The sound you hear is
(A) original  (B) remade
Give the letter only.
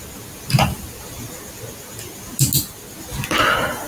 A